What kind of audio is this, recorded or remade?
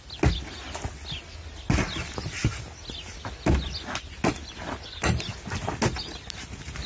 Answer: recorded